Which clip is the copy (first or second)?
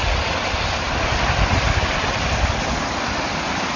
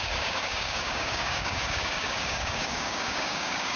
second